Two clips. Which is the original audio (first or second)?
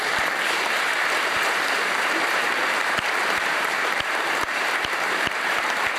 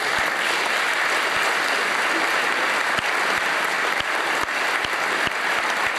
second